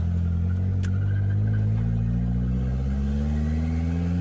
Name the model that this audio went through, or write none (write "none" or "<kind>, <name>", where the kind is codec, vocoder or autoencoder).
none